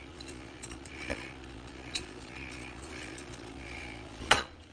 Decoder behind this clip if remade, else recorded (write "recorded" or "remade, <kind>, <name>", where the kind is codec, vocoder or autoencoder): remade, vocoder, Vocos